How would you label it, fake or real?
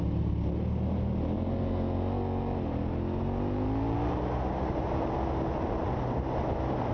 real